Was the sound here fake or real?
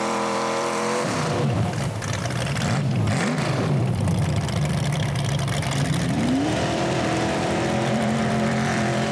fake